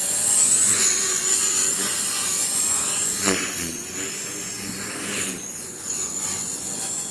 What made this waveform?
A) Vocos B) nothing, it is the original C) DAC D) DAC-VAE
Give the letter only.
A